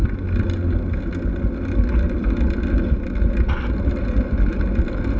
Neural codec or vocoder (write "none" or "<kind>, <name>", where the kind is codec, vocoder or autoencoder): none